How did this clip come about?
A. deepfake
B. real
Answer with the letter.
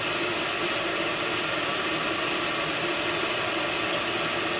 B